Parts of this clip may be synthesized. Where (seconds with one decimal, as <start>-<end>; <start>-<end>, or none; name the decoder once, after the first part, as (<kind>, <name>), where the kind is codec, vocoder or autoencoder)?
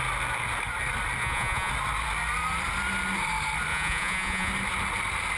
1.2-1.7 (vocoder, Vocos); 3.7-4.5